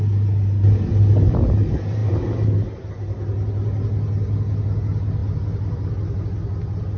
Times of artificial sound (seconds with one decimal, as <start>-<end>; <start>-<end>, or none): none